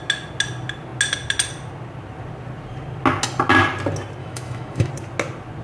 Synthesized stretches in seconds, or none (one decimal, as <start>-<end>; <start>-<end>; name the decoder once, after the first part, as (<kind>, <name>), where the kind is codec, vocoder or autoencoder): 4.2-4.9 (autoencoder, DAC-VAE)